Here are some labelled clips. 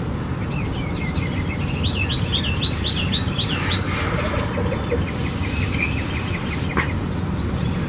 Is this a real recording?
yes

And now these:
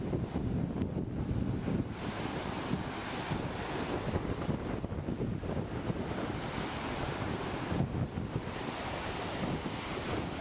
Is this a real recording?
yes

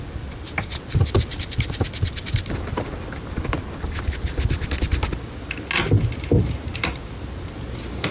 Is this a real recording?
yes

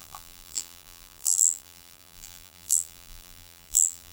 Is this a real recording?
no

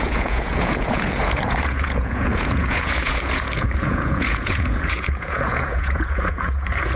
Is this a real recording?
no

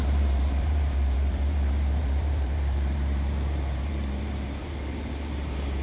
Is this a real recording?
no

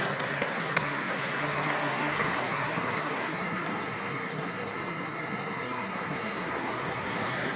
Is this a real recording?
no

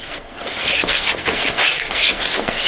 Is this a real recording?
no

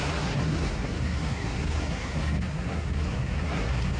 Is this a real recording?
no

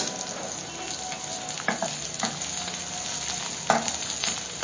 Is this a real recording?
yes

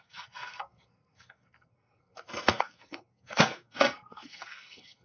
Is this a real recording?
no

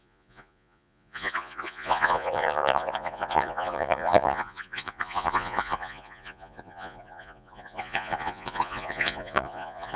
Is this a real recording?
no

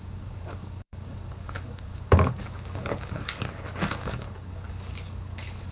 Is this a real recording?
no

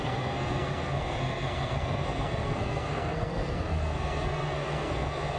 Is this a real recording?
no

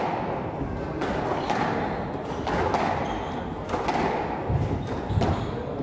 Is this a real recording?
yes